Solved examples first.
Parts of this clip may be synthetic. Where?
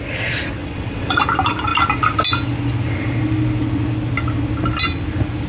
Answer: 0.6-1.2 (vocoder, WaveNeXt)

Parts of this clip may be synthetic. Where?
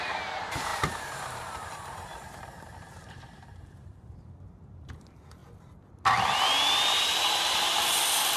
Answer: 0.0-5.4 (vocoder, BigVGAN v2); 7.4-8.4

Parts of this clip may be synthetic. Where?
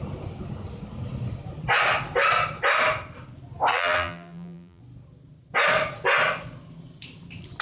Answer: 3.7-4.8 (vocoder, BigVGAN v2)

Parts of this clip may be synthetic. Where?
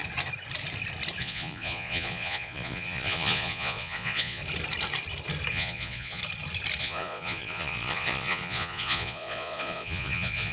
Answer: 1.2-4.4 (vocoder, Vocos); 5.5-6.2; 6.8-10.5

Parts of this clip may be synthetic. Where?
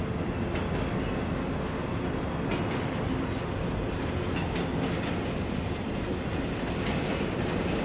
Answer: 6.1-6.7 (vocoder, BigVGAN v2)